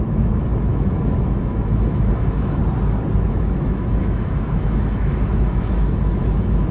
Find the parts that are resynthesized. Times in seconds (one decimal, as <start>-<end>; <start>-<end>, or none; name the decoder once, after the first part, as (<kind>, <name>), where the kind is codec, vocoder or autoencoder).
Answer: 0.0-2.6 (autoencoder, DAC-VAE); 3.3-6.7